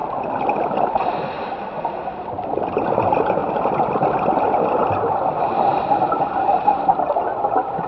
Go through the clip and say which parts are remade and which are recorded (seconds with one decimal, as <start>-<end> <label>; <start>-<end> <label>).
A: 0.0-2.3 remade; 2.3-5.7 recorded; 5.7-7.2 remade; 7.2-7.9 recorded